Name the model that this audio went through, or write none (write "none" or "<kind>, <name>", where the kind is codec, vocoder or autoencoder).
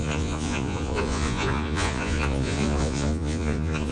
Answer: vocoder, Vocos